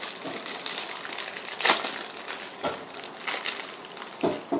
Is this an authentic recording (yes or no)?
yes